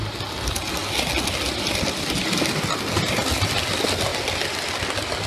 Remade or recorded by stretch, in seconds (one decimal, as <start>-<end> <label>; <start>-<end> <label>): 0.0-5.3 recorded